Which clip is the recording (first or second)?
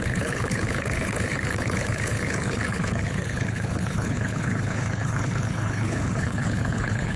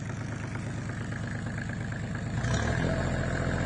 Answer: second